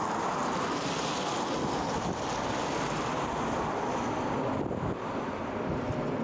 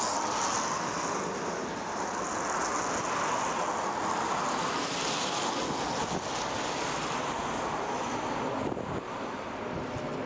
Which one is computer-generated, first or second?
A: first